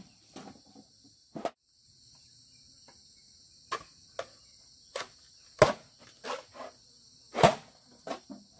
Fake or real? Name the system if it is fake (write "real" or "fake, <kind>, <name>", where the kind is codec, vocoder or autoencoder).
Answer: real